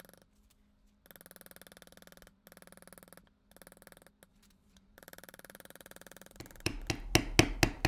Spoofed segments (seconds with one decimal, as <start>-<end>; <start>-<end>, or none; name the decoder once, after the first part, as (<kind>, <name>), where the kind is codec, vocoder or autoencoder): 4.3-6.9 (vocoder, BigVGAN v2)